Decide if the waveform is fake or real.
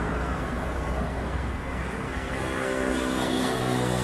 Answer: fake